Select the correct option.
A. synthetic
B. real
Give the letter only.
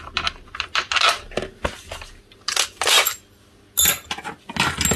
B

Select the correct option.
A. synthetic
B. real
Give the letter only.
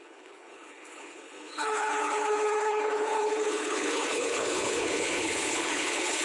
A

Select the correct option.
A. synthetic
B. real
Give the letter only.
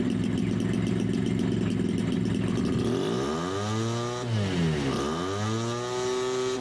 B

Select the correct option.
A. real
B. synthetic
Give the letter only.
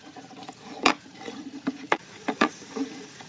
B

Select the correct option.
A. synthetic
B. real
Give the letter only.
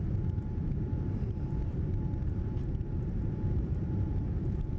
A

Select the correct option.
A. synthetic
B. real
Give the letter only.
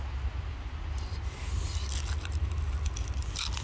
B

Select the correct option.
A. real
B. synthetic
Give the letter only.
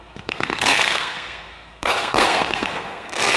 B